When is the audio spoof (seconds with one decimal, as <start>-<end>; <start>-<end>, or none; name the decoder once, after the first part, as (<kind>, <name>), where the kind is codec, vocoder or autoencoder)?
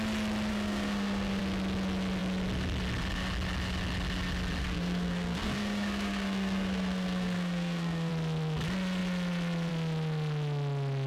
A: 0.5-1.4 (codec, SNAC); 4.6-8.1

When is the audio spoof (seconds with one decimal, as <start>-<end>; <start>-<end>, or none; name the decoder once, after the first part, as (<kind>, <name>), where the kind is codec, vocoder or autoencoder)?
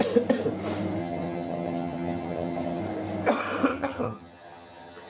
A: 1.0-2.8 (vocoder, HiFi-GAN); 3.7-5.1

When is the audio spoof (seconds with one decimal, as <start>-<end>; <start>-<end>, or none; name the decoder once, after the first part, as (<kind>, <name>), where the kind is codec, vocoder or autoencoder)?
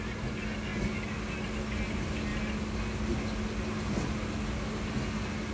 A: none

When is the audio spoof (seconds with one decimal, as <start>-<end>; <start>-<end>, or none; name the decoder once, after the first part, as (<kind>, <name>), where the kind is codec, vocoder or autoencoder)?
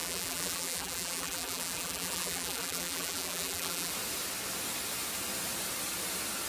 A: 0.0-3.9 (vocoder, BigVGAN v2)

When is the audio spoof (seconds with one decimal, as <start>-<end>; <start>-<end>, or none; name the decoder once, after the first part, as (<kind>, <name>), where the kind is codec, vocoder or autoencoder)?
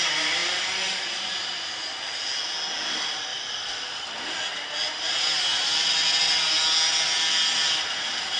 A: none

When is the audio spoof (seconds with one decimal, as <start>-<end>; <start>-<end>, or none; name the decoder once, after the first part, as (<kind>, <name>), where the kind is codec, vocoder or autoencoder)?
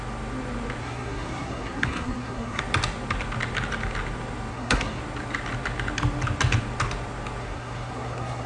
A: 0.8-2.6 (codec, SNAC); 4.5-5.0; 7.4-8.5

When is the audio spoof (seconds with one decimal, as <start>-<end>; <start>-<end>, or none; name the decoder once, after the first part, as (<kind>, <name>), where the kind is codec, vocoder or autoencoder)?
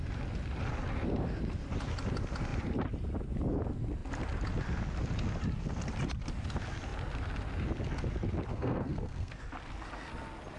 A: 8.5-9.3 (codec, SNAC)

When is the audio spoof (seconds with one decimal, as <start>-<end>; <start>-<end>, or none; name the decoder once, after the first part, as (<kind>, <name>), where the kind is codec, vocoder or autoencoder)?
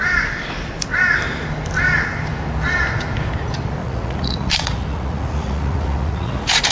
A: 3.8-6.7 (vocoder, Vocos)